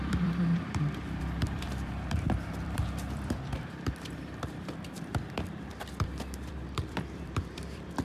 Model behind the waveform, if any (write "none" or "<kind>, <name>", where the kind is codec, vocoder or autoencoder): vocoder, BigVGAN v2